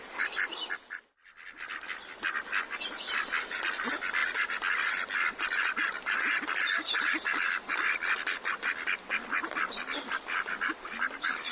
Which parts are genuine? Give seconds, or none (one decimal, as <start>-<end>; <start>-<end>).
0.0-11.5